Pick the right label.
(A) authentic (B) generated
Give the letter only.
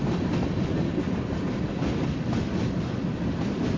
A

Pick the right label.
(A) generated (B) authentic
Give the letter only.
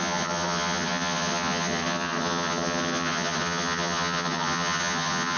A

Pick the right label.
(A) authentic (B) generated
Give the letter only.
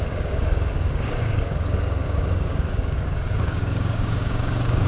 B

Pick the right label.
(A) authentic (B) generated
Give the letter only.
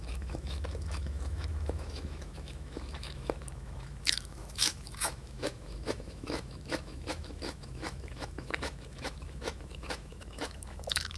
B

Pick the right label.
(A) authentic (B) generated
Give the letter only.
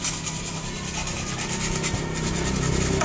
A